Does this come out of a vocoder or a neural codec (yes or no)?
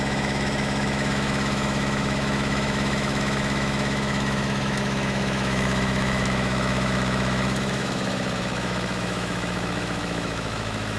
yes